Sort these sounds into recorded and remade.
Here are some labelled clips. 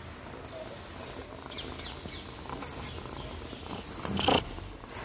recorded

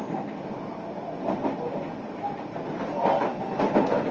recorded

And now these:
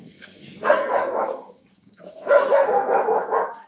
remade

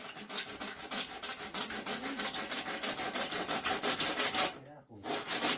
recorded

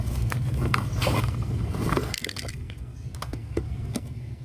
remade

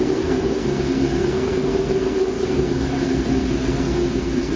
remade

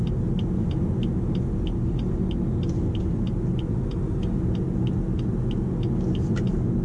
recorded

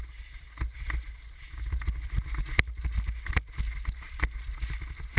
recorded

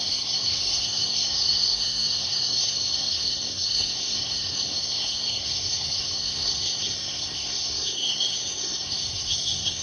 remade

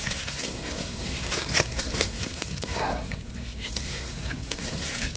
remade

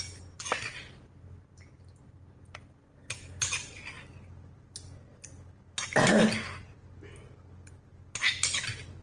recorded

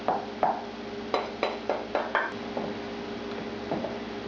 recorded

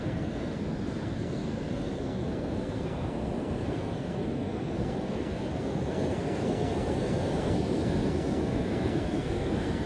remade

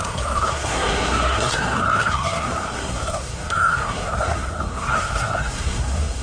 remade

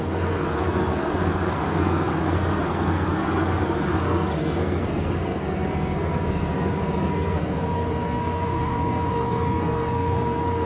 remade